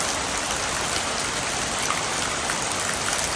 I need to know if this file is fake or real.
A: real